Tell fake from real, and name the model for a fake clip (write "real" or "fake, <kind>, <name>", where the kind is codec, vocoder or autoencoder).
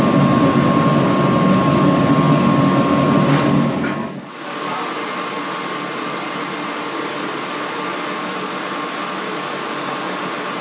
real